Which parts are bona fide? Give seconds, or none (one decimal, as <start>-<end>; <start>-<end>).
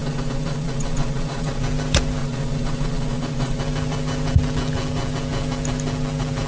1.6-2.2; 3.6-6.5